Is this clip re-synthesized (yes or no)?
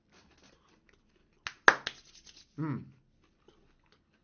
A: no